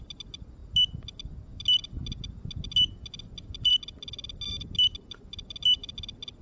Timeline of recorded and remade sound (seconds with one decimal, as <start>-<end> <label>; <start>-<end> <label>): 0.0-6.4 recorded